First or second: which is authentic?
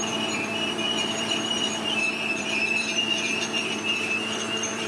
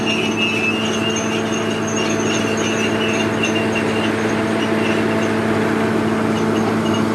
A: second